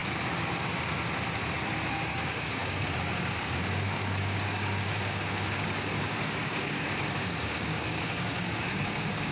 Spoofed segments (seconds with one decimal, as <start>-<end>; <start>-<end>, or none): 1.9-9.3